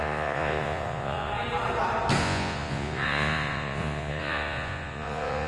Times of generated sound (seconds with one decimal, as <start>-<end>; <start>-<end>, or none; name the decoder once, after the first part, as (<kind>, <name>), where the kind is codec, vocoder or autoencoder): 0.0-1.3 (vocoder, Vocos); 2.2-5.5

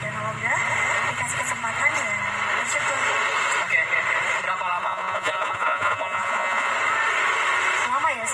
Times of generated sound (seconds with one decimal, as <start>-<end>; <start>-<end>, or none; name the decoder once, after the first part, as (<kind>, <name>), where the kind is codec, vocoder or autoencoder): 4.8-6.7 (vocoder, Vocos)

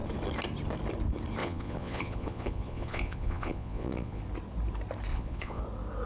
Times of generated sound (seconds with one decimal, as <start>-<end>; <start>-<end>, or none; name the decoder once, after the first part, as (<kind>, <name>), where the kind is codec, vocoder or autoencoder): 1.4-4.2 (vocoder, Vocos); 5.1-5.6

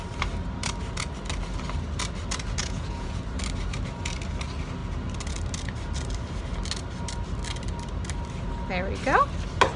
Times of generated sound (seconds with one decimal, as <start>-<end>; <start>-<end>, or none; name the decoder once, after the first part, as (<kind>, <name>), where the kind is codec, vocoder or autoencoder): 2.6-3.2 (vocoder, Vocos)

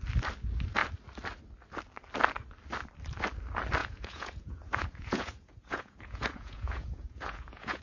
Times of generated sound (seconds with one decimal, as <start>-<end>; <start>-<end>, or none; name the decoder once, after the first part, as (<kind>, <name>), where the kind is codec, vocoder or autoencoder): 3.8-7.8 (vocoder, Vocos)

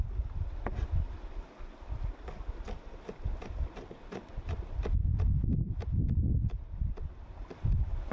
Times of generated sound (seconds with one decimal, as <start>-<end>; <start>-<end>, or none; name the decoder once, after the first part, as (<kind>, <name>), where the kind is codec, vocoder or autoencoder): none